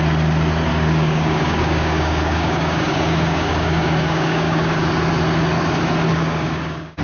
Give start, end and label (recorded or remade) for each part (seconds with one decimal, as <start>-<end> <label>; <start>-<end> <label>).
0.0-0.7 recorded; 0.7-4.9 remade; 4.9-6.1 recorded; 6.1-7.0 remade